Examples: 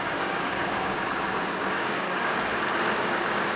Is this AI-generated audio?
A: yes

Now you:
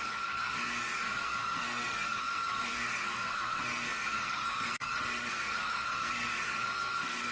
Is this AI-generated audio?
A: yes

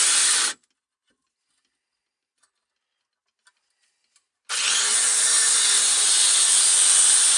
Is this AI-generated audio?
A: no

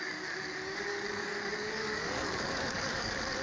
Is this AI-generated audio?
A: yes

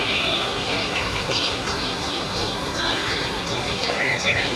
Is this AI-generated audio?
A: yes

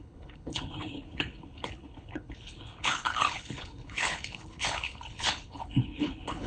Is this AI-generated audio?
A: yes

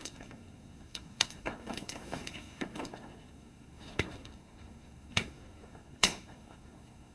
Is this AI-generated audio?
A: yes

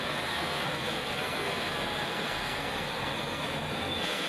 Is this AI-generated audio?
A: yes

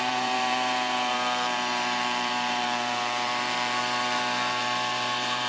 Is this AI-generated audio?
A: yes